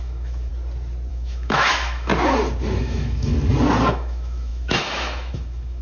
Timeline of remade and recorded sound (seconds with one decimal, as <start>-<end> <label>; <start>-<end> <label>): 0.0-0.5 remade; 0.5-1.1 recorded; 1.1-2.1 remade; 2.1-2.8 recorded; 2.8-3.3 remade; 3.3-3.9 recorded; 3.9-5.8 remade